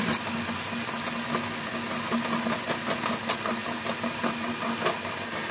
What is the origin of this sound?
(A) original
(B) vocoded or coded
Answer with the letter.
A